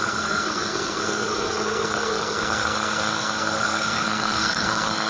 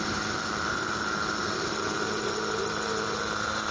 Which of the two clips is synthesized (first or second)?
first